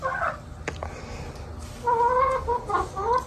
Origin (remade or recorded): recorded